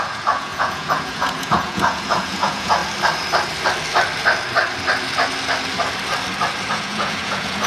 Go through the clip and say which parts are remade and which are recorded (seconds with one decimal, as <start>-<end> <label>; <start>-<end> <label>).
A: 0.0-2.8 remade; 2.8-6.7 recorded; 6.7-7.7 remade